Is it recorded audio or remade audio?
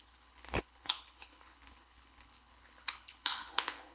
remade